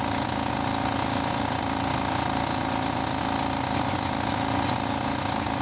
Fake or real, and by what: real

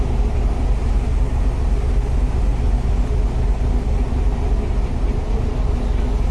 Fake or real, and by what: real